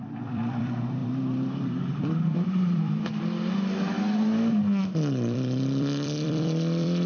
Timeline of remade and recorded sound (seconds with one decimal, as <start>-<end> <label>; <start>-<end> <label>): 0.0-3.1 remade; 3.1-4.8 recorded; 4.8-7.1 remade

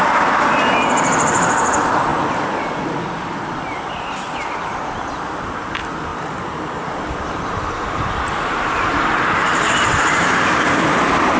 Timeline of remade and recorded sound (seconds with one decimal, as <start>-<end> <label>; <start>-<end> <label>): 0.0-6.1 recorded; 6.1-11.0 remade; 11.0-11.4 recorded

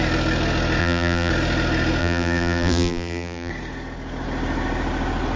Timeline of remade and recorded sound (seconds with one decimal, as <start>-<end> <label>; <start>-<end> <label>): 0.0-0.8 recorded; 0.8-1.3 remade; 1.3-2.0 recorded; 2.0-3.5 remade; 3.5-5.4 recorded

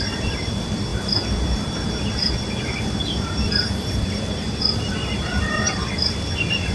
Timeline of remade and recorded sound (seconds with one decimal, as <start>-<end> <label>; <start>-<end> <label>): 0.0-0.9 remade; 0.9-2.0 recorded; 2.0-6.7 remade

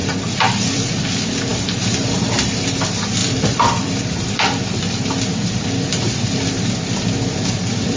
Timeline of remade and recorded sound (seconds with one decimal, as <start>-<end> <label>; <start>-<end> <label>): 0.0-8.0 remade

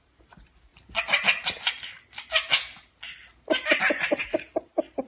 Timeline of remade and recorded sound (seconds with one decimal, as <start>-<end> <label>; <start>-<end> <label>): 0.0-0.7 remade; 0.7-3.8 recorded; 3.8-5.1 remade